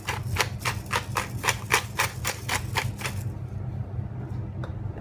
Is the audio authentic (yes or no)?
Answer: yes